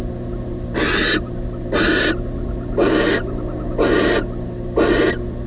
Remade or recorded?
recorded